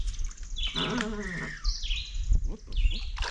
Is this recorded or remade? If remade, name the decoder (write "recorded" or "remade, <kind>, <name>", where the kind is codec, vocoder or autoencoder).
recorded